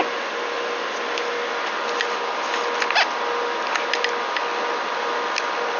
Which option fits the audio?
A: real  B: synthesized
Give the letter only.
A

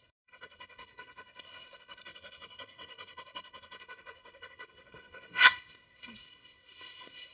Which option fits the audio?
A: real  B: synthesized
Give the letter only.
B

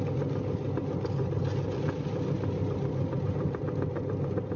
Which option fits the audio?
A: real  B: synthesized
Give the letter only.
A